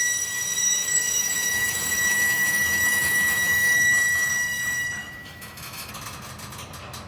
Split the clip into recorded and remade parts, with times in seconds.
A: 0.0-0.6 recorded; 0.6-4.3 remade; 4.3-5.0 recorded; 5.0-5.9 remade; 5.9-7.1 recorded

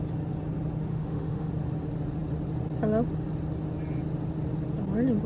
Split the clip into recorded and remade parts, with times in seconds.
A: 0.0-0.9 recorded; 0.9-1.5 remade; 1.5-5.3 recorded

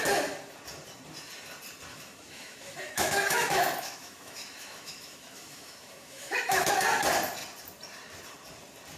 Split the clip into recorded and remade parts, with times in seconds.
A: 0.0-1.9 recorded; 1.9-6.7 remade; 6.7-9.0 recorded

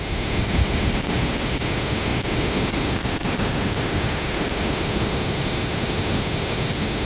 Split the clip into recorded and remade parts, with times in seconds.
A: 0.0-7.1 remade

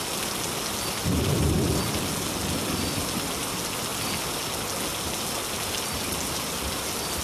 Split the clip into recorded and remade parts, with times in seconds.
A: 0.0-7.2 recorded

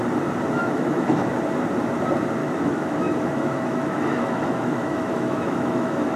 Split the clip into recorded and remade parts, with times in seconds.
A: 0.0-0.6 recorded; 0.6-1.3 remade; 1.3-2.4 recorded; 2.4-6.2 remade

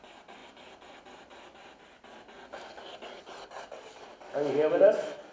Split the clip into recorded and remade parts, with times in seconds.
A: 0.0-5.3 recorded